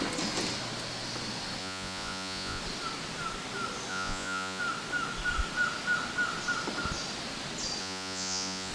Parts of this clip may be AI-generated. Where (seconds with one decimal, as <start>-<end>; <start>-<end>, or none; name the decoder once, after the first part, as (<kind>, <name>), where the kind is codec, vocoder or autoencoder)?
1.6-2.6 (vocoder, Vocos); 3.9-4.6; 7.8-8.7